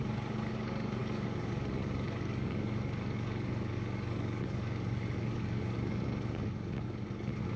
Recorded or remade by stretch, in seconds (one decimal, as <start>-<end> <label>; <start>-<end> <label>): 0.0-7.6 remade